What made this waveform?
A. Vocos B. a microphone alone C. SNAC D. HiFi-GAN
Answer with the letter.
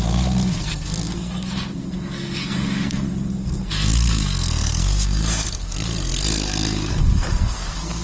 C